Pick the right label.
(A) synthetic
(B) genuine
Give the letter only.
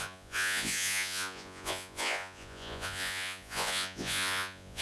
A